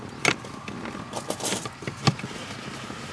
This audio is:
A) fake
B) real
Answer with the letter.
B